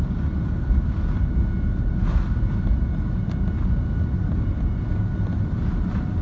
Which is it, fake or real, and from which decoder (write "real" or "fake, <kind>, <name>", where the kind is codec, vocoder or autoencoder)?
real